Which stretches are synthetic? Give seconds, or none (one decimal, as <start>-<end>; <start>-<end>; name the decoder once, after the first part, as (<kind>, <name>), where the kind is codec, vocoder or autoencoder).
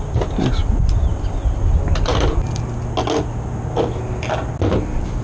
none